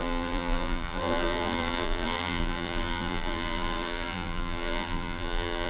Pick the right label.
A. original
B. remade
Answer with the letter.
B